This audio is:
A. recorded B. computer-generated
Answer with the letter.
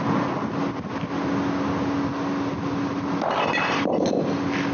A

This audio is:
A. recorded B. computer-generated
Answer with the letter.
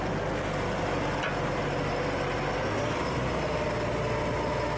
A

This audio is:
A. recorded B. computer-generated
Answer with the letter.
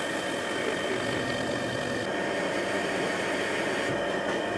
A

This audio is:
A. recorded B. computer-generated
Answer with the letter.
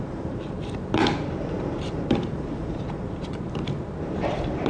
B